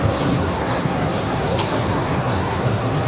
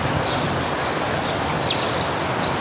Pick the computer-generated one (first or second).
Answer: first